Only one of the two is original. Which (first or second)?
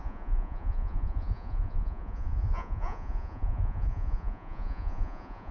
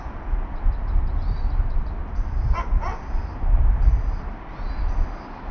second